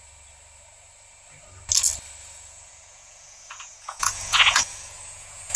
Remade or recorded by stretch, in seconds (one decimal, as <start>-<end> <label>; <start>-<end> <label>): 0.0-2.2 recorded; 2.2-5.6 remade